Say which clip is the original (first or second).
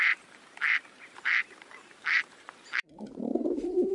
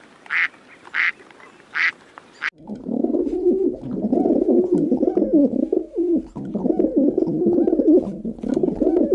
second